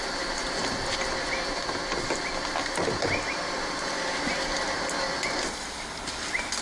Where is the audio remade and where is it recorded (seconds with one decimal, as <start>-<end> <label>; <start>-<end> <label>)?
0.0-6.6 recorded